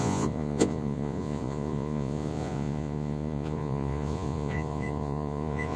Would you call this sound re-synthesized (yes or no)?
yes